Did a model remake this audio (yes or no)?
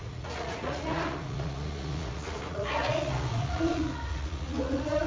yes